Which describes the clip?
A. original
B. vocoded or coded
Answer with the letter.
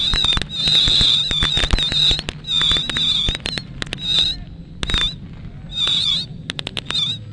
A